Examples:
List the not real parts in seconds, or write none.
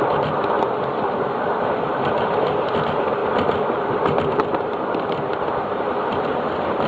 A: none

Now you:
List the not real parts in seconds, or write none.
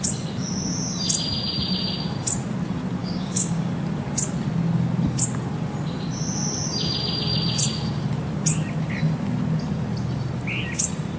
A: 3.0-3.7 (codec, DAC)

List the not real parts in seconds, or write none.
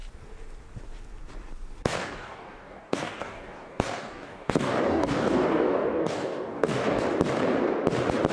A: 2.0-7.0 (codec, DAC)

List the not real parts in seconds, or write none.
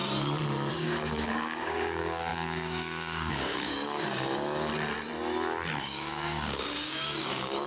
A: 0.7-4.7 (codec, DAC); 5.8-7.7